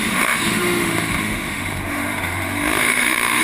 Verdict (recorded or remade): remade